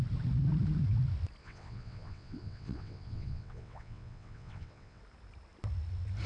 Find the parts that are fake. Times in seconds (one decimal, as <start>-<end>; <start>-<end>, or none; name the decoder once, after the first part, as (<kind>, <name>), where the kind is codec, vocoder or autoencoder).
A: 1.4-5.0 (vocoder, WaveNeXt)